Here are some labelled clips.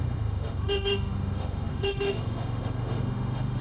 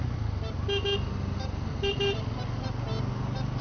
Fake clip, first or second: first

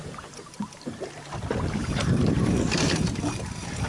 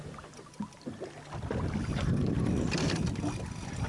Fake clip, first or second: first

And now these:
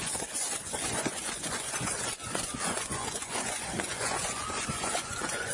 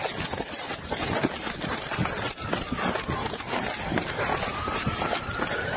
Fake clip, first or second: first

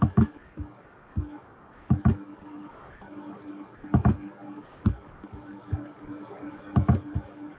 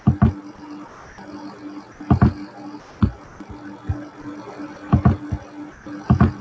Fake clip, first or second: first